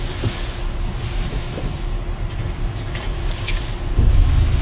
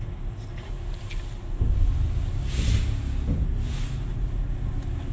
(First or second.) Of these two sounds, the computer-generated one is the first